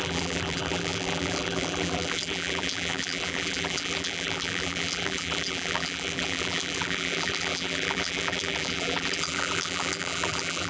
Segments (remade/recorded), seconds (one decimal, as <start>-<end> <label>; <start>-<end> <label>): 0.0-10.7 remade